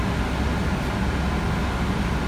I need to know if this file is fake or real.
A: real